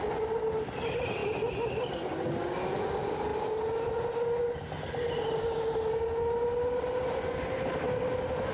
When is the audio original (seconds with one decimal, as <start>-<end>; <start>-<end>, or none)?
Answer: 0.0-8.5